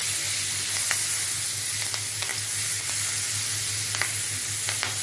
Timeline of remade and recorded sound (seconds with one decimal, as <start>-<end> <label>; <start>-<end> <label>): 0.0-5.0 recorded